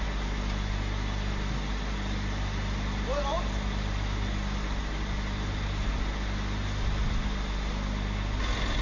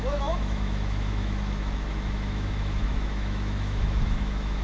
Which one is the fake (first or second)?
second